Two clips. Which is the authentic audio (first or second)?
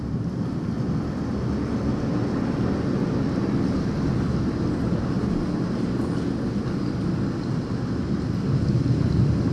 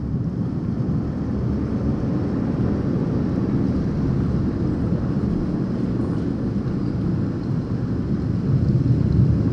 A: first